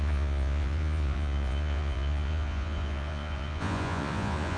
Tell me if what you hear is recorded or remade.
remade